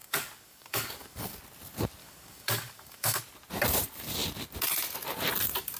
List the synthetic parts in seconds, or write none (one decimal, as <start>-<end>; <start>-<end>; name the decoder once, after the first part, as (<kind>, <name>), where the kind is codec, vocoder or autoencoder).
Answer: 0.0-1.4 (codec, DAC); 2.0-3.2